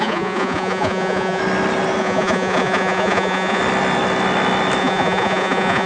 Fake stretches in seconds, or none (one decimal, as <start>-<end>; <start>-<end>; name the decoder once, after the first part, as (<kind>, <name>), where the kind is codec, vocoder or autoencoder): 0.0-1.4 (vocoder, Vocos); 2.0-3.6; 4.8-5.9